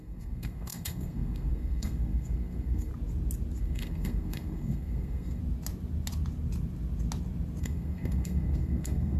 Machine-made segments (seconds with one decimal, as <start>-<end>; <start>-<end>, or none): 0.0-2.9; 3.6-5.4; 7.6-9.2